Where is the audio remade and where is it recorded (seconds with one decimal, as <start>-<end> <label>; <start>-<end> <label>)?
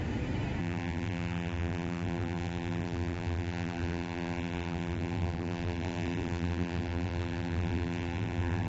0.0-0.6 recorded; 0.6-8.7 remade